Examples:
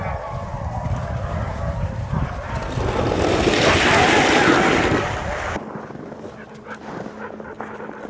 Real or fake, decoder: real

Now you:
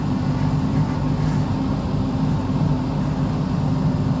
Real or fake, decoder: real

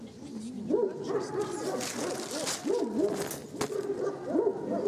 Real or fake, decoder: real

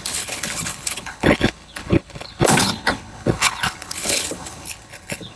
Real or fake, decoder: fake, codec, HILCodec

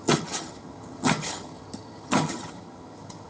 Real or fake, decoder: fake, vocoder, HiFi-GAN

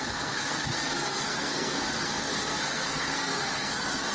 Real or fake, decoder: fake, codec, SNAC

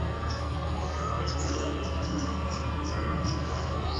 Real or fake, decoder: fake, codec, SNAC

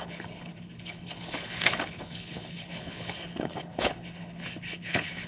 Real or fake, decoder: fake, codec, HILCodec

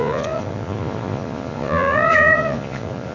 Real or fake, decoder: fake, vocoder, Vocos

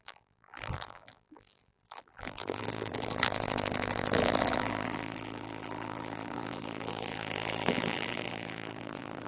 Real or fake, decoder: fake, vocoder, BigVGAN v2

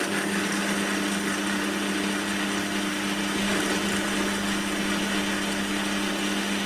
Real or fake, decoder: real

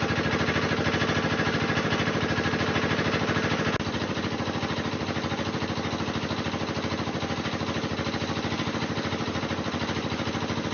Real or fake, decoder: real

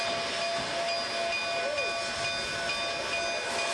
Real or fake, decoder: real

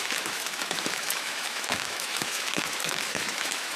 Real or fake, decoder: fake, autoencoder, DAC-VAE